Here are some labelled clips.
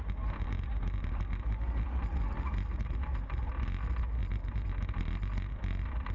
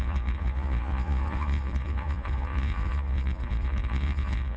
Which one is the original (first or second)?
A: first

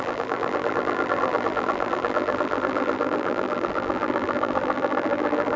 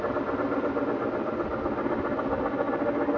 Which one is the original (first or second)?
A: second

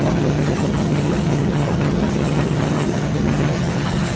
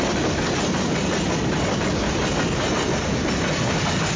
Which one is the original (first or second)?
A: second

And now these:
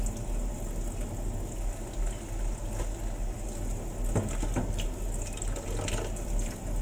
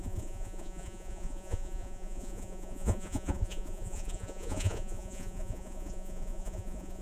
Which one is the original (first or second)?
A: first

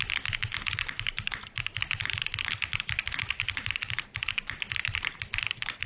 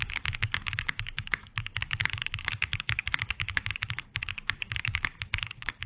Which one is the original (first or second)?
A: first